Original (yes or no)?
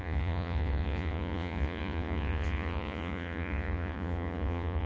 no